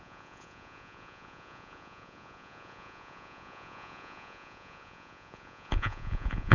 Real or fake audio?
fake